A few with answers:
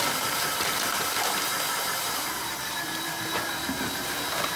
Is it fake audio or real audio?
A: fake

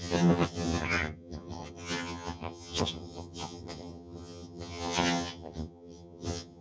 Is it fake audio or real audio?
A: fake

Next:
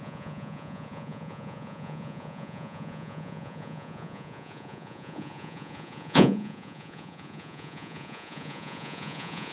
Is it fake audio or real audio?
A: fake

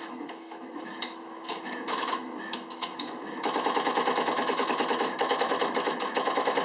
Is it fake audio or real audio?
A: fake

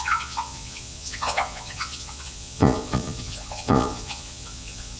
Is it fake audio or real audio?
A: fake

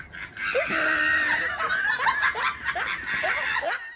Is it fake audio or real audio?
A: real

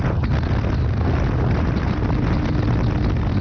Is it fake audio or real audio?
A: real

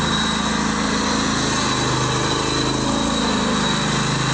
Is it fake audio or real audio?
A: real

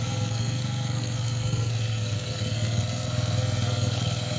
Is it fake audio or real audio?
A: fake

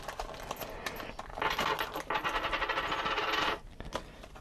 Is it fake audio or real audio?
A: real